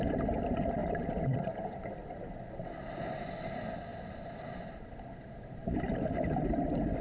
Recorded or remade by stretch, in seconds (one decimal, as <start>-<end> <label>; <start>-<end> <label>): 0.0-0.8 recorded; 0.8-1.8 remade; 1.8-3.9 recorded; 3.9-5.8 remade; 5.8-7.0 recorded